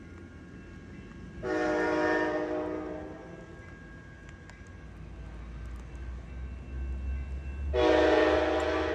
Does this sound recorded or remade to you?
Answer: recorded